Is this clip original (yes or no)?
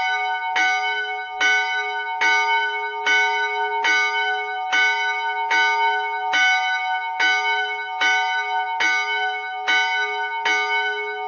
yes